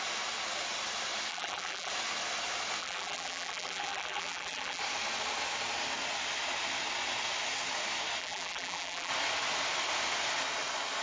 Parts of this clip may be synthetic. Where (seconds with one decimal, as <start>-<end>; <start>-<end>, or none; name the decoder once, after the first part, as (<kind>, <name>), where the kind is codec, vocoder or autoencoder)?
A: 1.3-1.9 (vocoder, BigVGAN v2); 2.8-4.8; 8.2-9.1